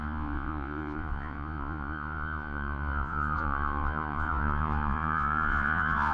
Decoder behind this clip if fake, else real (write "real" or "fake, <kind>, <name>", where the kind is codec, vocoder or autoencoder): fake, vocoder, Vocos